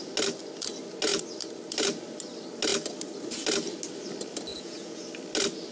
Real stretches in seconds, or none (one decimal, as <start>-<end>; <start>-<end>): 0.0-4.5; 5.0-5.7